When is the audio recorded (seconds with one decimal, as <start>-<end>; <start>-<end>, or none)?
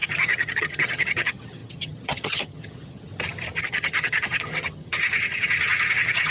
3.1-3.6